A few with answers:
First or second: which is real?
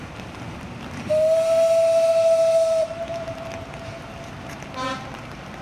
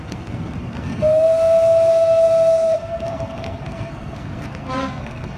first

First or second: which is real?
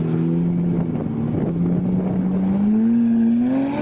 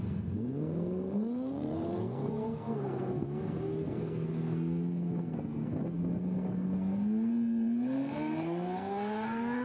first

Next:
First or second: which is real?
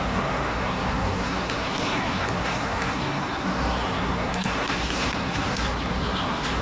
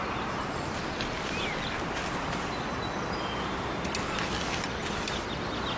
second